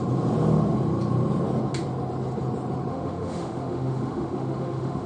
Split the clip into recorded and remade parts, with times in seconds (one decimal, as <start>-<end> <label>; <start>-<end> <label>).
0.0-2.9 recorded; 2.9-5.1 remade